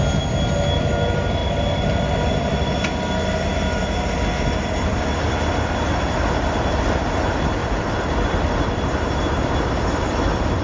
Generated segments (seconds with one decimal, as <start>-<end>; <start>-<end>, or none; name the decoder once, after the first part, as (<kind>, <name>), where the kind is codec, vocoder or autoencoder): 7.6-9.2 (vocoder, BigVGAN v2)